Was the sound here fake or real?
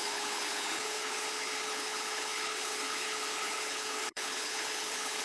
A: fake